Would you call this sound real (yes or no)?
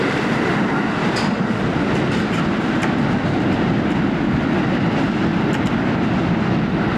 yes